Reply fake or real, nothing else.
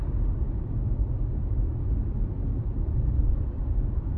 real